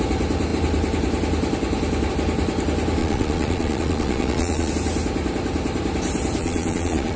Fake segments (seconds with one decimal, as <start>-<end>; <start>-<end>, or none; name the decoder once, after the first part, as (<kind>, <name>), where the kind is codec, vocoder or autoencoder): 3.0-4.7 (vocoder, Vocos); 6.4-7.2

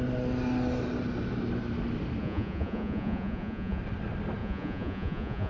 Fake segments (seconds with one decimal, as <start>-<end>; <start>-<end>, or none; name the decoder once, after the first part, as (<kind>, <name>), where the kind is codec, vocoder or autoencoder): 2.2-3.8 (vocoder, Vocos); 4.4-5.5

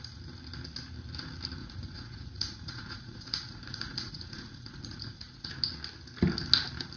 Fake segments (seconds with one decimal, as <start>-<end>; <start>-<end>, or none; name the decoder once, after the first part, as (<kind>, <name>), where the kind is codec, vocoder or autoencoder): 1.6-5.5 (vocoder, Vocos)

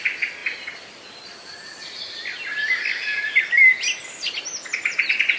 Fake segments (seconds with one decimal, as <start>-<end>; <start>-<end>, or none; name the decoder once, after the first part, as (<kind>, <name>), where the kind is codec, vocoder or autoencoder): none

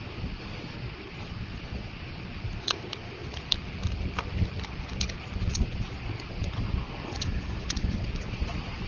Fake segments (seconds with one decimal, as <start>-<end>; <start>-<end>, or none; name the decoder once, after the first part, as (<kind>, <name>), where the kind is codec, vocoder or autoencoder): 0.0-3.2 (vocoder, Vocos); 5.4-8.9